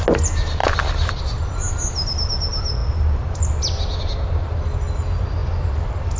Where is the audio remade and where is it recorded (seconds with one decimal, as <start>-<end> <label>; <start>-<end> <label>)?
0.0-6.2 recorded